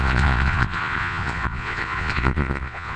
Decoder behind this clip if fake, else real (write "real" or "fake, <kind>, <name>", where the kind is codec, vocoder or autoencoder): fake, vocoder, Vocos